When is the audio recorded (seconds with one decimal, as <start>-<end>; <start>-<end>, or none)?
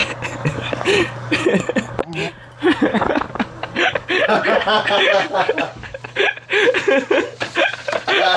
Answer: 2.0-2.9; 6.2-8.4